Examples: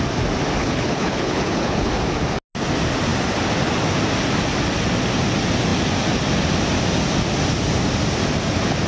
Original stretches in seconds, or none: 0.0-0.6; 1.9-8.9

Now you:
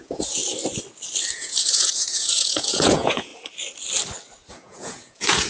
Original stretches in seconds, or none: 0.4-1.3; 3.3-4.5

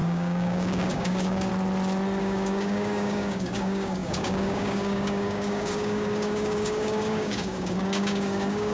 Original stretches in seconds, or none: 1.5-2.2

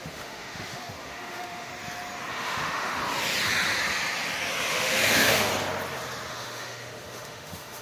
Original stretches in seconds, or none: 1.7-2.3; 3.0-4.7; 5.5-6.3

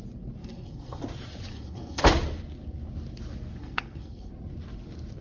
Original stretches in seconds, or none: 0.0-0.4; 1.0-1.5; 2.0-3.6; 4.3-5.2

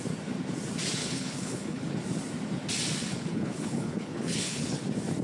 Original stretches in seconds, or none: 0.0-1.0; 1.9-3.1; 4.8-5.2

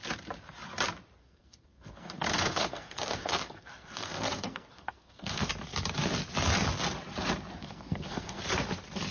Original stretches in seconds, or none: 0.0-1.2; 5.5-7.6; 8.4-9.1